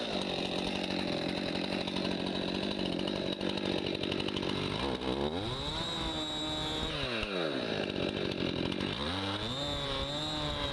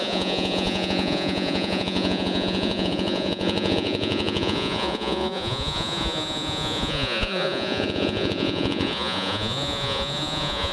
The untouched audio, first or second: first